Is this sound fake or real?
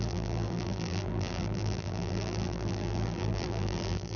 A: fake